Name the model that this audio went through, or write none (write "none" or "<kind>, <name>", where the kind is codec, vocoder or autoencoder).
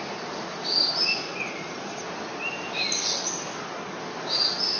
none